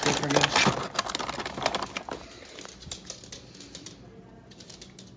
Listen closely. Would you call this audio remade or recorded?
recorded